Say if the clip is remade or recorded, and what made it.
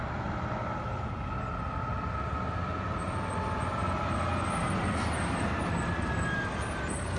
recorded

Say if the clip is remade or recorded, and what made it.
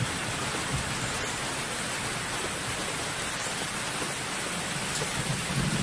recorded